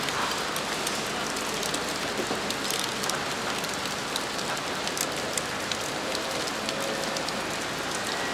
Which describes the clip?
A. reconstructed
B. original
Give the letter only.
B